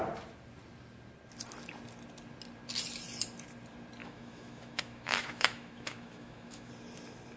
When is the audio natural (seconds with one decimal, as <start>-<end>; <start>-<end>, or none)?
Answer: 0.0-4.0; 6.7-7.4